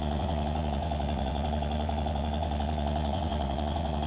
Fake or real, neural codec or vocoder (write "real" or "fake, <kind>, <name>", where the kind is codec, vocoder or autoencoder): fake, vocoder, WaveNeXt